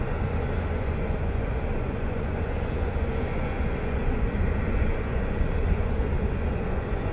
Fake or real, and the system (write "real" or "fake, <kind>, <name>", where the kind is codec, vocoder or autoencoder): fake, vocoder, Vocos